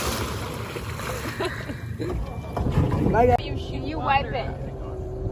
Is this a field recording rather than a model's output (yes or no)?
yes